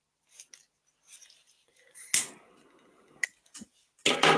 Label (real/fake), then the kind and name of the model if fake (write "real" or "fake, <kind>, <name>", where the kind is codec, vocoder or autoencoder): real